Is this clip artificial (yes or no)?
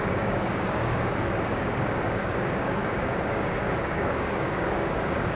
yes